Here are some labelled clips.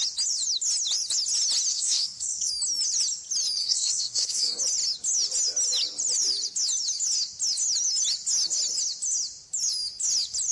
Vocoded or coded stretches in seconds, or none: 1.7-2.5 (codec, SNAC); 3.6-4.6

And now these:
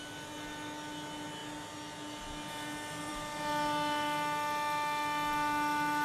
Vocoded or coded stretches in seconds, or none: none

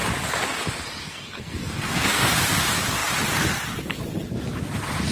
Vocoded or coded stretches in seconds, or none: 1.0-2.3 (codec, SNAC)

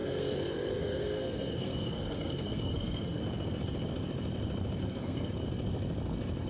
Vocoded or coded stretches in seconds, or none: 0.0-3.2 (codec, SNAC); 4.8-5.3

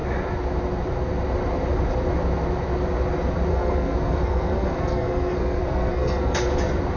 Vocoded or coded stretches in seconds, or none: 3.5-6.5 (codec, SNAC)

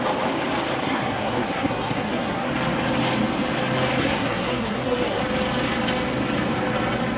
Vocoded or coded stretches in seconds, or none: 0.8-2.5 (codec, SNAC); 4.0-5.2

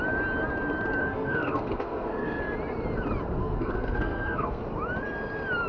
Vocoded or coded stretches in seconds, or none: 1.0-2.4 (codec, SNAC); 3.4-4.6